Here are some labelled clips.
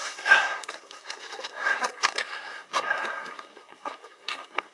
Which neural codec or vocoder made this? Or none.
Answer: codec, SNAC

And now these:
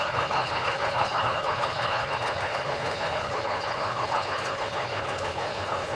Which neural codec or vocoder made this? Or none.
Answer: codec, HILCodec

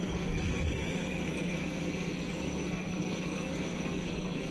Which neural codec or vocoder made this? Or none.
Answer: codec, SNAC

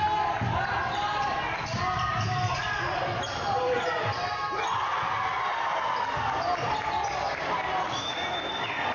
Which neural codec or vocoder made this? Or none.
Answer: none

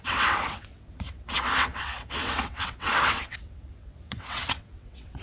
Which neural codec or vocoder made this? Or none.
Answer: vocoder, WaveNeXt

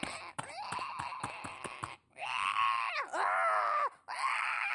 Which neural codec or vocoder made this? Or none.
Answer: none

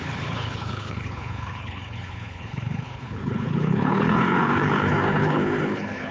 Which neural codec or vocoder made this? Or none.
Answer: codec, HILCodec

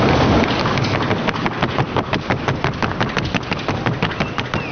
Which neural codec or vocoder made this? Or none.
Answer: none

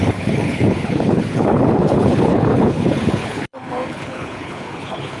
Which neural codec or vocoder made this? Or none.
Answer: codec, HILCodec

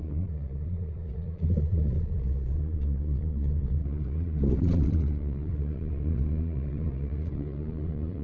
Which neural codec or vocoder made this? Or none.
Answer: vocoder, Vocos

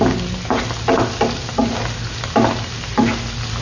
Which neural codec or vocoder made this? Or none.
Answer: none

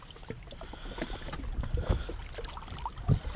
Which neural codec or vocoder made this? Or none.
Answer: none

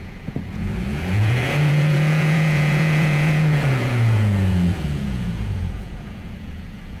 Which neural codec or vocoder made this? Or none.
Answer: vocoder, Vocos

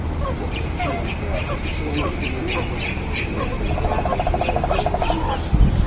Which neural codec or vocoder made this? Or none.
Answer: none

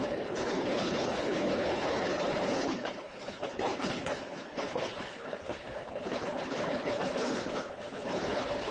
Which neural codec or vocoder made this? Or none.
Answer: codec, HILCodec